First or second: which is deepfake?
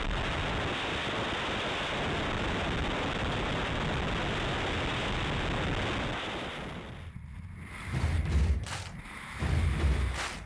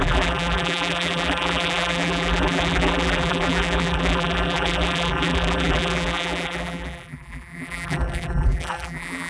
second